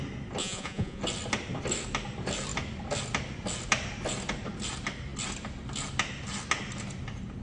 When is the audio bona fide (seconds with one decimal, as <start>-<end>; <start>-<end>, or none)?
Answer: 0.0-0.4; 1.0-7.4